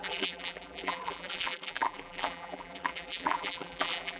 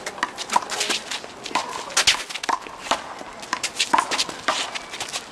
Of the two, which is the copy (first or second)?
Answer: first